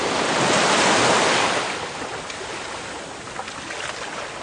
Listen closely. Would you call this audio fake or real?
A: real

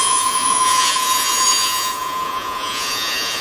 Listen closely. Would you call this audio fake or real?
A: fake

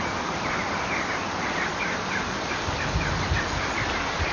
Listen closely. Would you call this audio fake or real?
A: real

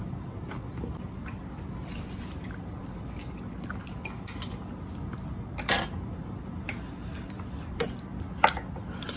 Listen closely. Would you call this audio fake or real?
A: real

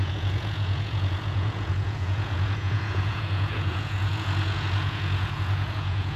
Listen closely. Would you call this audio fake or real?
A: fake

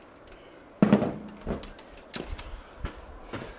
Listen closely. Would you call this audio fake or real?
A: real